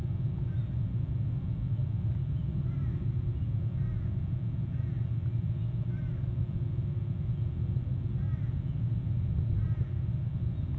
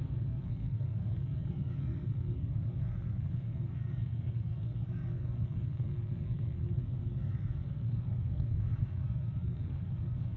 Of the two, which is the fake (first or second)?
second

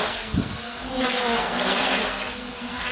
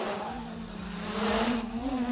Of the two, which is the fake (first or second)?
first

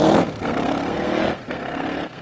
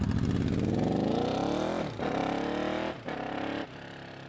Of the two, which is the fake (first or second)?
first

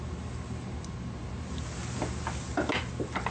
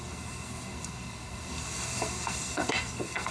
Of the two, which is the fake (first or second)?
second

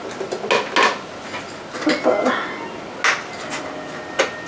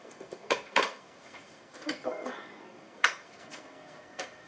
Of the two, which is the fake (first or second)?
second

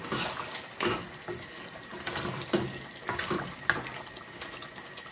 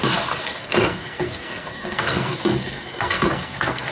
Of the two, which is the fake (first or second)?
second